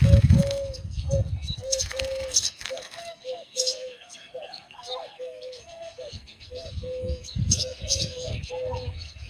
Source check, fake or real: fake